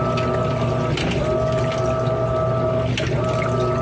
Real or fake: real